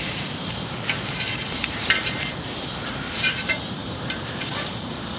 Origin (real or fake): fake